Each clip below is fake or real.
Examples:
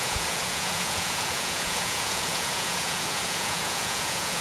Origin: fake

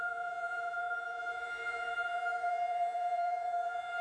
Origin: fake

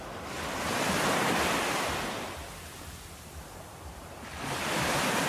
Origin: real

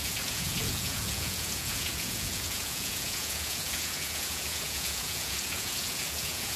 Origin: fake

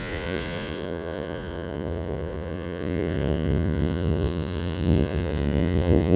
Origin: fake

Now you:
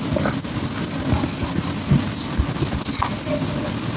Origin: real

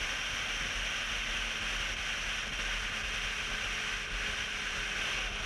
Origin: real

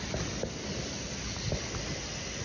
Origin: real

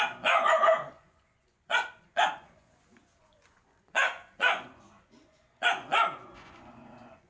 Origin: fake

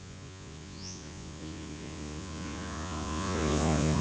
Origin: fake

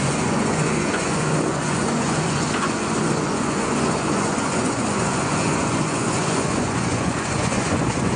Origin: fake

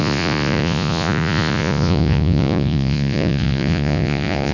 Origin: fake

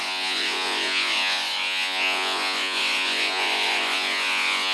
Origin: fake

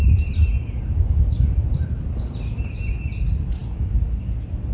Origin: real